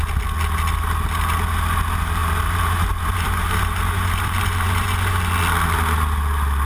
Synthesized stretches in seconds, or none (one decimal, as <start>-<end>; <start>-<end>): 2.2-5.3